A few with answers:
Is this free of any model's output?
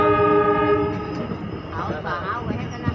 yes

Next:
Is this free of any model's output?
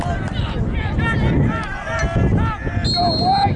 yes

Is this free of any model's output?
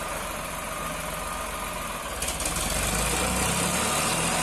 yes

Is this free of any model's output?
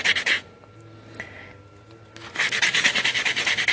yes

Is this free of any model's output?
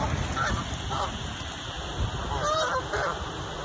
yes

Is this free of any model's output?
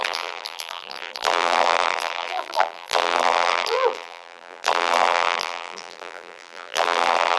no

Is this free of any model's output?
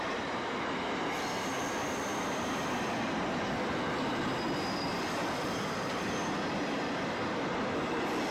no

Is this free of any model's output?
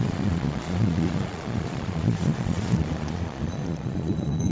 no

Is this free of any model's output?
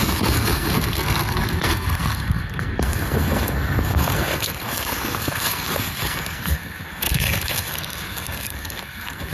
no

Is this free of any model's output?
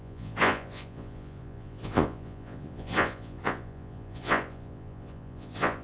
no